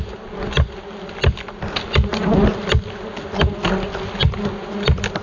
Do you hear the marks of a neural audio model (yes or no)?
no